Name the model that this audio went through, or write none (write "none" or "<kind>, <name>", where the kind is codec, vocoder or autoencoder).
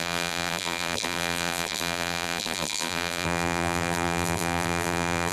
vocoder, BigVGAN v2